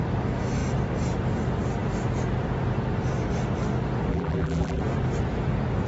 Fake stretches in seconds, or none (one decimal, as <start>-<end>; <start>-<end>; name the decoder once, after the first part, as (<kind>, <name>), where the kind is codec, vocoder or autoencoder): 4.1-4.8 (vocoder, BigVGAN v2)